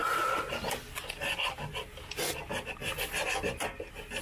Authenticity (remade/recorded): recorded